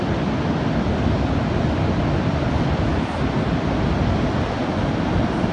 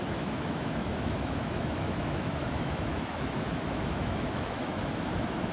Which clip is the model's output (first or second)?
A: second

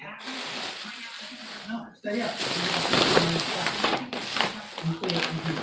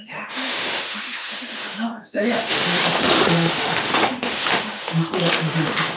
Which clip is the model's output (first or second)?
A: second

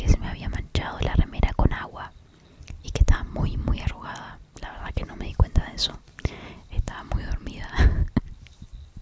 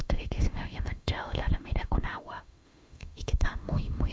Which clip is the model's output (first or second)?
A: second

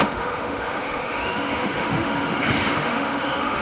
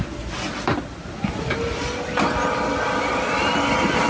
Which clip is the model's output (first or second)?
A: first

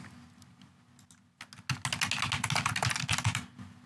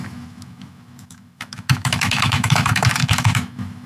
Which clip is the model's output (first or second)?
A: second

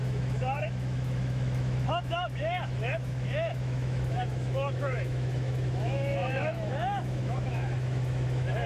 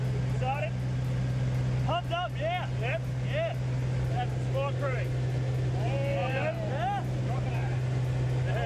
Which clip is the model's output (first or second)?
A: first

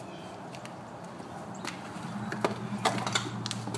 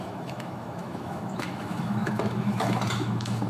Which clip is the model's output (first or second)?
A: second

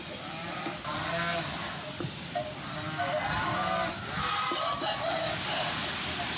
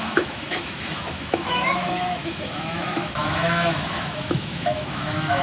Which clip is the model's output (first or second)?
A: second